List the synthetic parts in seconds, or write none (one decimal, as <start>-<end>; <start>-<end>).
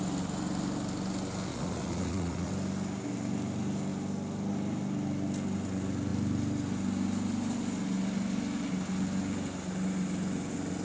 1.5-2.5